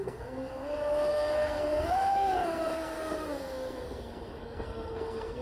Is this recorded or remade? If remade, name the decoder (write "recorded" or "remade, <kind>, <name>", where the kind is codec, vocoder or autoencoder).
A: remade, codec, SNAC